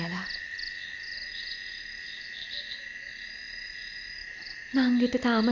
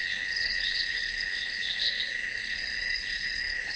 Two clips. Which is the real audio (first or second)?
first